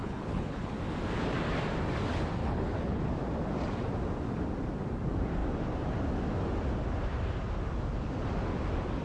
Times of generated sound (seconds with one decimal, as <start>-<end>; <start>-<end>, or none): 0.0-0.8; 2.4-3.0